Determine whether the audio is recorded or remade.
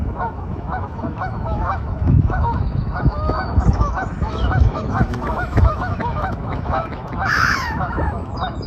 remade